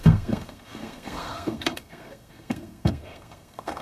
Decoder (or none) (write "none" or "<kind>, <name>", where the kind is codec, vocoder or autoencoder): codec, SNAC